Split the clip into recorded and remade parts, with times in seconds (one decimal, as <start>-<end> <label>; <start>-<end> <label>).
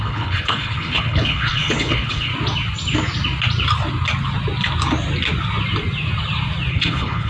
0.0-2.3 remade; 2.3-6.7 recorded; 6.7-7.3 remade